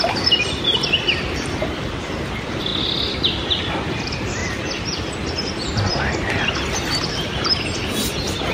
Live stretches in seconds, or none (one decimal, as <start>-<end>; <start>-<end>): 2.7-3.8; 4.4-7.0

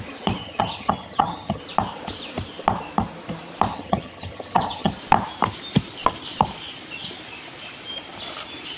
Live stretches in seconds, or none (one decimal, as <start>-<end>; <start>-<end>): 0.0-0.4; 1.6-3.7; 4.9-8.8

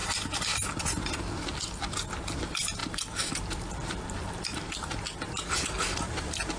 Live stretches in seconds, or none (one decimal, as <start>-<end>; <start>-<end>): 0.0-6.6

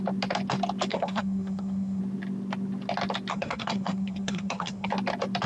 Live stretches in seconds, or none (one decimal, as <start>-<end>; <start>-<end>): 0.0-0.9; 2.0-3.3; 4.9-5.5